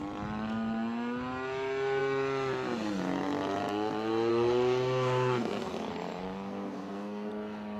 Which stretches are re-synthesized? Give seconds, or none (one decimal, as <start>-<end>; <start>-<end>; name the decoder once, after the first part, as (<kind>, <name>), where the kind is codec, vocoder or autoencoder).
4.3-7.3 (codec, SNAC)